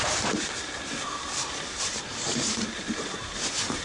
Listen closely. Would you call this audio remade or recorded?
remade